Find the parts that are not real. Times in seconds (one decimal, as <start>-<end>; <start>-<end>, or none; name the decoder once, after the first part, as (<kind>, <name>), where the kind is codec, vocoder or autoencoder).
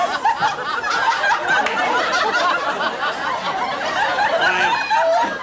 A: none